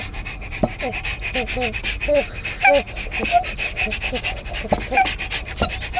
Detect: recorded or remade recorded